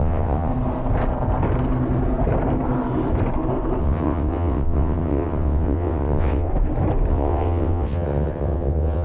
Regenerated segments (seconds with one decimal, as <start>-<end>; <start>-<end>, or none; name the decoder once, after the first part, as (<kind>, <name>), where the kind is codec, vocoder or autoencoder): 0.0-0.5 (vocoder, WaveNeXt); 3.8-6.5; 7.1-9.0